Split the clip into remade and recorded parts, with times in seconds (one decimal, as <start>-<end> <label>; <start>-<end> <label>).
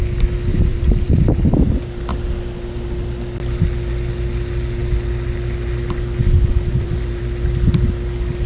0.0-0.5 recorded; 0.5-1.4 remade; 1.4-6.7 recorded; 6.7-7.2 remade; 7.2-8.5 recorded